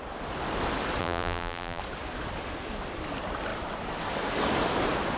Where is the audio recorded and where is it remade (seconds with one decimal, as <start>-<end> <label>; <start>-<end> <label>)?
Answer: 0.0-1.0 recorded; 1.0-1.8 remade; 1.8-5.2 recorded